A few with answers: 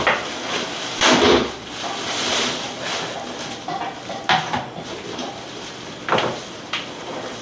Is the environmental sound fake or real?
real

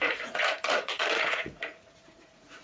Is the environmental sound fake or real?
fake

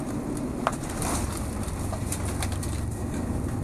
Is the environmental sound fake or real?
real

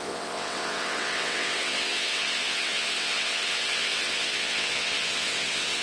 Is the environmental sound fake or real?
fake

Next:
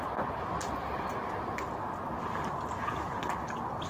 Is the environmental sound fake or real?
real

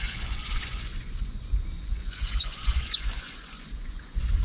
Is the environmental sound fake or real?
fake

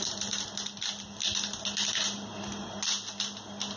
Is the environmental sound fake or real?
real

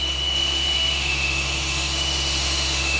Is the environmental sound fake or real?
fake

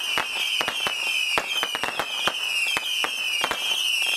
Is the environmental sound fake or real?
real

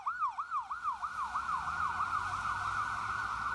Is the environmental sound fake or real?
real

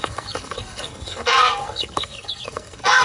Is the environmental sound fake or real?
fake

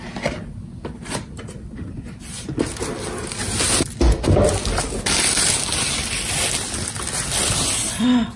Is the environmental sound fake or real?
real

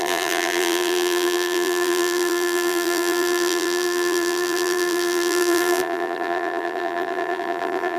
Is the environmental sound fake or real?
fake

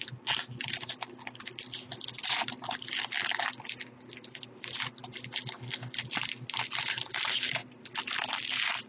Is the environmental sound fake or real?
real